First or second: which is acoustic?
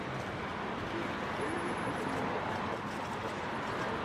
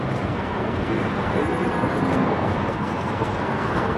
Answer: first